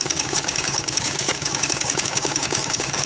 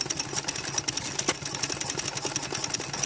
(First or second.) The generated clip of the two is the first